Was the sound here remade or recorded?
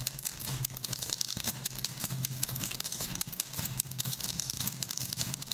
remade